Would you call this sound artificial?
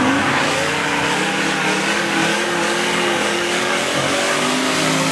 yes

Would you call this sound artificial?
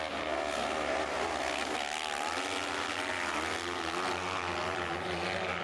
no